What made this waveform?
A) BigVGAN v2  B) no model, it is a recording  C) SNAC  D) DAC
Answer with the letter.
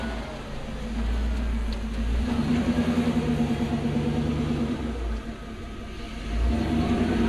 B